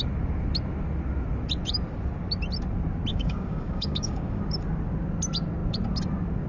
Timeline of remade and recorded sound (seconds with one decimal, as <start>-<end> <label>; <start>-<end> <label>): 0.0-3.1 recorded; 3.1-4.4 remade; 4.4-6.5 recorded